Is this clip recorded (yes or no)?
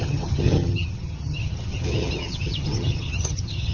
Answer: no